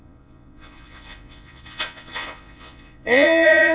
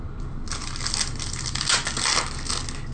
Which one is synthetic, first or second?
first